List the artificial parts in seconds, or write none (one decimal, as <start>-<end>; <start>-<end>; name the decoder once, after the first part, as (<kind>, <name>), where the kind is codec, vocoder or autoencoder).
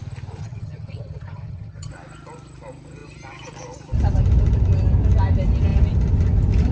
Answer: 0.4-1.9 (vocoder, HiFi-GAN)